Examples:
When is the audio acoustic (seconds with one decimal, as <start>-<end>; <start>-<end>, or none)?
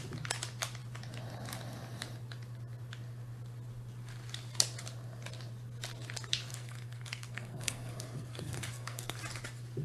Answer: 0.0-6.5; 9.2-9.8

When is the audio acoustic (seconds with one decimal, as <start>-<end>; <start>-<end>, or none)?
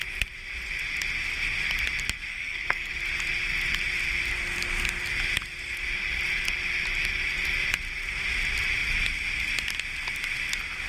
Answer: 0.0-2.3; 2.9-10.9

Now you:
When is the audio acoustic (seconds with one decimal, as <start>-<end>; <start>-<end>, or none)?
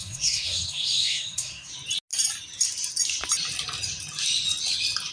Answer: 1.7-5.1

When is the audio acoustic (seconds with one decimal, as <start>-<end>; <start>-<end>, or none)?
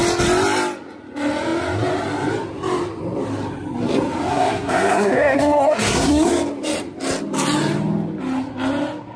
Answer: 0.0-4.3; 6.3-9.2